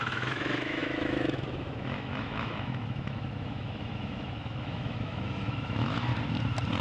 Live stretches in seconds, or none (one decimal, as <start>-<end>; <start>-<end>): 6.1-6.8